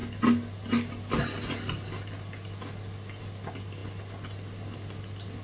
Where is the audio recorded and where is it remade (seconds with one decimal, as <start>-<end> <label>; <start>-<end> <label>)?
0.0-5.4 recorded